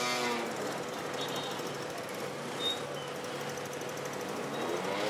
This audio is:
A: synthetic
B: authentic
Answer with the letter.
B